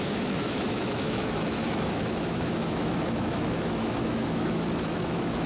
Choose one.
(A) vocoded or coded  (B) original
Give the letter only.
A